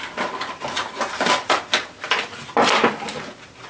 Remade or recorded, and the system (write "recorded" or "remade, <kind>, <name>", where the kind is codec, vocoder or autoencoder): recorded